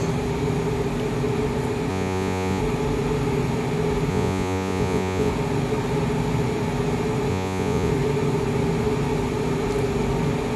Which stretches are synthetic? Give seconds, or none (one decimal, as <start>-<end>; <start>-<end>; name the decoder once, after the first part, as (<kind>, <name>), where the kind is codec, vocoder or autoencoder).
1.9-2.6 (vocoder, Vocos); 4.1-5.3; 7.3-7.9